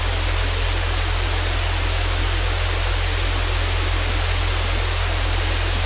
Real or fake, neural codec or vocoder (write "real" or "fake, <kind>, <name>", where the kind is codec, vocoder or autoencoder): real